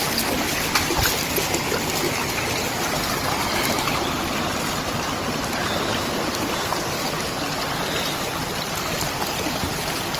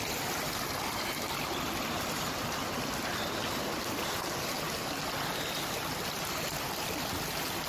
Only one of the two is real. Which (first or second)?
second